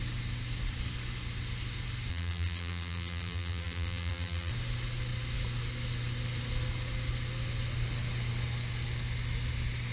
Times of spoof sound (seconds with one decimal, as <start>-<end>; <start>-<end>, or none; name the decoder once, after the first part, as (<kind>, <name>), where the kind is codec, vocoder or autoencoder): 2.1-4.5 (vocoder, BigVGAN v2)